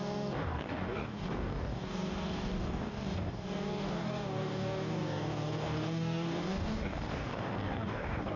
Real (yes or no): no